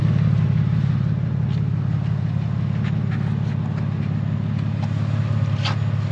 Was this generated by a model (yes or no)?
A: no